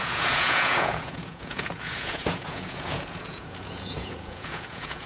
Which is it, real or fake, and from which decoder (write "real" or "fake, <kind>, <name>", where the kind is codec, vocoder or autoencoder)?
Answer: fake, vocoder, Vocos